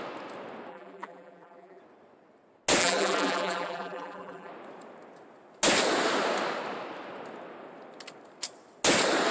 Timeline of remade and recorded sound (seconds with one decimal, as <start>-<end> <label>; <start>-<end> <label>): 0.0-0.7 recorded; 0.7-1.8 remade; 1.8-2.8 recorded; 2.8-4.5 remade; 4.5-9.3 recorded

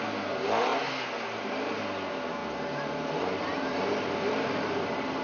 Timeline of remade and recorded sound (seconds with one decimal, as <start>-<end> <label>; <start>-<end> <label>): 0.0-0.7 recorded; 0.7-1.8 remade; 1.8-2.4 recorded; 2.4-5.2 remade

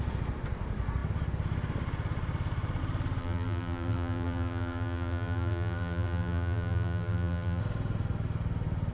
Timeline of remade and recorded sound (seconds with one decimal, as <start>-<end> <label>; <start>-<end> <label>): 0.0-3.2 recorded; 3.2-7.6 remade; 7.6-8.9 recorded

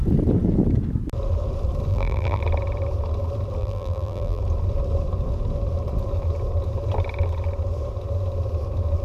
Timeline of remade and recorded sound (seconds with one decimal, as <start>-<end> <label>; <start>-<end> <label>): 0.0-1.9 recorded; 1.9-2.4 remade; 2.4-3.6 recorded; 3.6-4.4 remade; 4.4-9.0 recorded

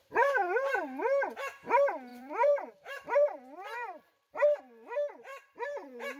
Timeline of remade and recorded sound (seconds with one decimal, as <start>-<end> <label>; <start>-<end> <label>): 0.0-2.1 recorded; 2.1-4.6 remade; 4.6-6.2 recorded

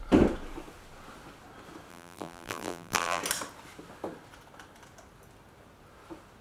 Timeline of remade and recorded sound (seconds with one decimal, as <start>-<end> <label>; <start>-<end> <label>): 0.0-1.9 recorded; 1.9-3.2 remade; 3.2-6.4 recorded

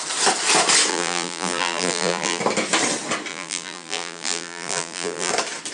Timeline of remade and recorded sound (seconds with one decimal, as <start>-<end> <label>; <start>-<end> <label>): 0.0-0.9 recorded; 0.9-2.4 remade; 2.4-3.3 recorded; 3.3-5.3 remade; 5.3-5.7 recorded

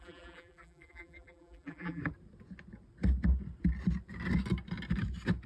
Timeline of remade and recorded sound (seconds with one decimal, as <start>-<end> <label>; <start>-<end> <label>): 0.0-2.0 remade; 2.0-5.5 recorded